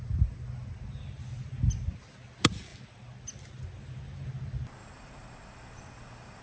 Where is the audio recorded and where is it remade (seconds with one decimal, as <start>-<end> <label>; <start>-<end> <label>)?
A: 0.0-4.8 recorded; 4.8-6.4 remade